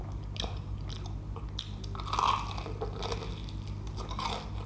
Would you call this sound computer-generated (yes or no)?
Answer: no